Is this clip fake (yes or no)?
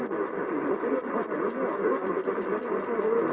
no